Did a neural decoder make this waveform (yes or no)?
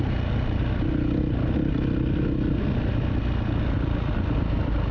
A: no